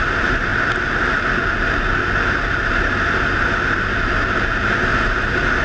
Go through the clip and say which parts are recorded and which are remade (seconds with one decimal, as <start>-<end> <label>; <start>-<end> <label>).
0.0-5.6 recorded